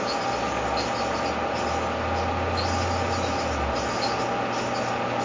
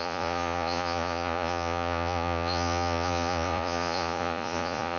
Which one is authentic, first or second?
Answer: first